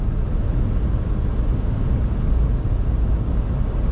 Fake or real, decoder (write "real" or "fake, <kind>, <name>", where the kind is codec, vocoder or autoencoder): real